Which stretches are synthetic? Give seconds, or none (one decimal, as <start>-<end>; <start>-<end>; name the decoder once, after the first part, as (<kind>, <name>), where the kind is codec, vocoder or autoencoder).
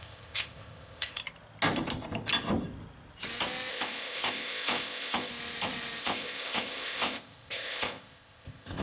0.0-1.2 (codec, ZipCodec); 3.7-5.3; 6.0-8.8